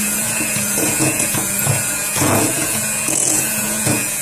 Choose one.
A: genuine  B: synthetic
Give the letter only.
B